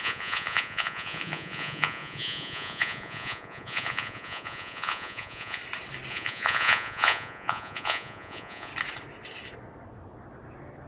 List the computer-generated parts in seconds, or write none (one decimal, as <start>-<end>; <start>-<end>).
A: 0.0-5.6; 6.1-8.7